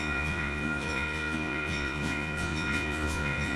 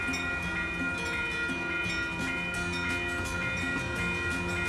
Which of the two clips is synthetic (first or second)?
first